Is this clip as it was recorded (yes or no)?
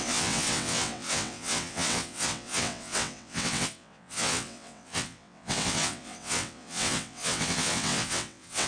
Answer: no